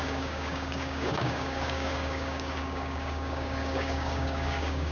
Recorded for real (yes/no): no